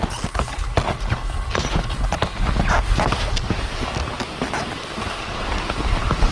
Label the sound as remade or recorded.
recorded